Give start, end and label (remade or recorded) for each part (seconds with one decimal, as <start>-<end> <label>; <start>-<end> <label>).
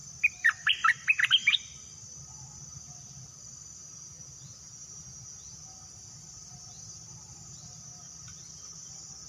0.0-0.8 remade; 0.8-9.3 recorded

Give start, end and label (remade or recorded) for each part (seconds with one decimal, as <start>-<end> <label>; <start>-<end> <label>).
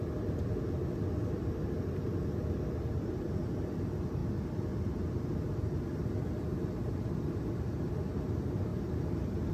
0.0-0.8 remade; 0.8-2.4 recorded; 2.4-4.2 remade; 4.2-6.9 recorded; 6.9-9.5 remade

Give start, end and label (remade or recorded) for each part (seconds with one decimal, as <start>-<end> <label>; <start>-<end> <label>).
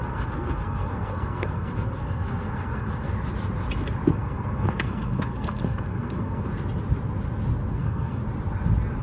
0.0-3.1 remade; 3.1-4.1 recorded; 4.1-6.5 remade; 6.5-7.7 recorded; 7.7-8.2 remade; 8.2-9.0 recorded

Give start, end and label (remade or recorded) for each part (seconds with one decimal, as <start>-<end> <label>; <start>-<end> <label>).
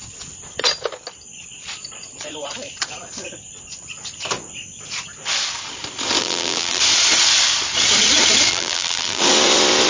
0.0-6.2 recorded; 6.2-6.8 remade; 6.8-8.5 recorded; 8.5-9.2 remade; 9.2-9.9 recorded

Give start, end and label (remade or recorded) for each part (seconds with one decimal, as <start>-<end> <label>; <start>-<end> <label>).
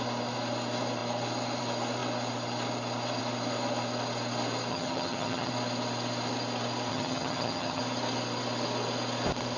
0.0-4.7 recorded; 4.7-5.5 remade; 5.5-6.9 recorded; 6.9-7.8 remade; 7.8-9.6 recorded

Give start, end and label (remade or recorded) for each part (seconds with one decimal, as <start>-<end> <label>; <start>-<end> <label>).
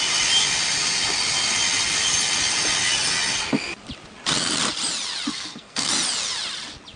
0.0-5.3 recorded; 5.3-5.9 remade; 5.9-7.0 recorded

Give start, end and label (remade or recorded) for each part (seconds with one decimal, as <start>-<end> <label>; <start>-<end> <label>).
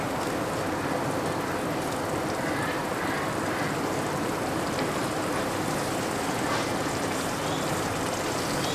0.0-8.7 recorded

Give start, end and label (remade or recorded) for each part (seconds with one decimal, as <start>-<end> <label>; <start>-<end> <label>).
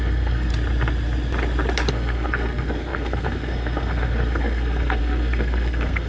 0.0-0.5 remade; 0.5-1.9 recorded; 1.9-6.1 remade